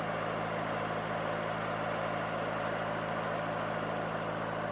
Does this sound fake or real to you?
real